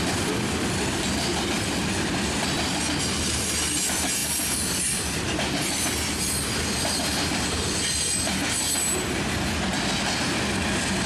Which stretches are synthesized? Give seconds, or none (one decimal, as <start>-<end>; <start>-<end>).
4.2-7.8